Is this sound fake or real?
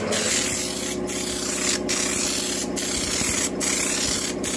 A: real